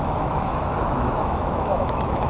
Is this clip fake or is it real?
fake